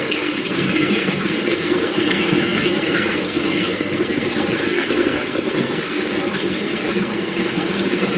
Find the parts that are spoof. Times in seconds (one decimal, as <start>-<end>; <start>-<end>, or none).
0.0-8.2